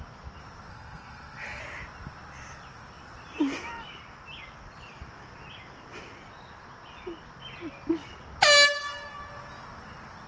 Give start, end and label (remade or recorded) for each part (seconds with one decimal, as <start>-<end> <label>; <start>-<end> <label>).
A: 0.0-0.7 recorded; 0.7-1.6 remade; 1.6-10.3 recorded